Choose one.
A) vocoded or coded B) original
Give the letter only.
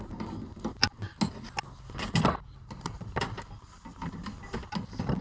B